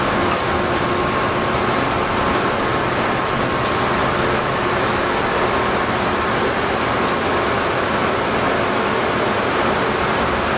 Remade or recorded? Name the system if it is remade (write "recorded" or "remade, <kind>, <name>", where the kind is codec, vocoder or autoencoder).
recorded